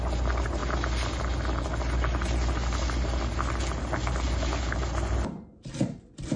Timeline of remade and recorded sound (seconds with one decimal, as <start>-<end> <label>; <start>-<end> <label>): 0.0-6.4 recorded